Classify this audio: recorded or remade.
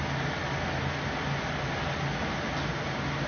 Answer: recorded